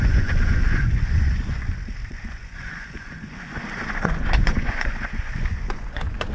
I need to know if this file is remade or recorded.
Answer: remade